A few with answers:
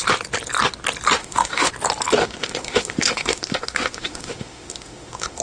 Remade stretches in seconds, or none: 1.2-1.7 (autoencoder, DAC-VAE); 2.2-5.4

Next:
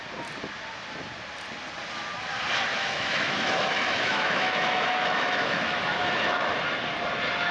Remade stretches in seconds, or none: 2.7-6.6 (autoencoder, DAC-VAE)